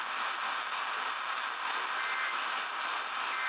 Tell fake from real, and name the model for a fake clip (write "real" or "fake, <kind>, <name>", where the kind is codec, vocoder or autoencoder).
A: real